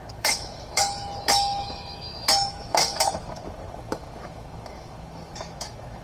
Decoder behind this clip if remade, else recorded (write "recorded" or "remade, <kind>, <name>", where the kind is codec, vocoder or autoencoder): remade, autoencoder, DAC-VAE